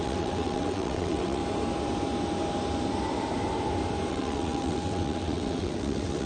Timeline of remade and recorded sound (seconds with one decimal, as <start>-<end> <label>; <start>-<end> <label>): 0.0-1.4 remade; 1.4-4.1 recorded; 4.1-6.3 remade